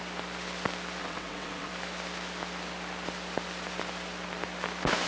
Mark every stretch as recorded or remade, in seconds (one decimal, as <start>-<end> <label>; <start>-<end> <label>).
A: 0.0-1.0 recorded; 1.0-1.7 remade; 1.7-5.1 recorded